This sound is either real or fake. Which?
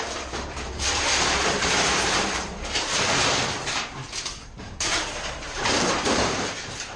fake